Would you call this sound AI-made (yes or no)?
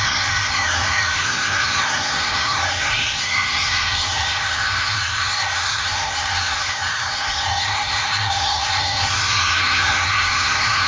yes